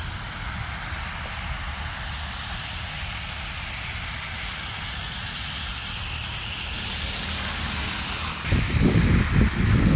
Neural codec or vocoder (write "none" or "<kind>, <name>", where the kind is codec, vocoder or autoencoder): none